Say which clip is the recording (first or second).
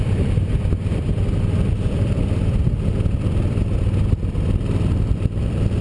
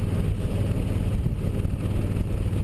second